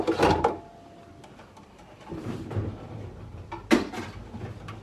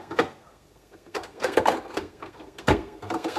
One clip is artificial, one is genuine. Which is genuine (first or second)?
first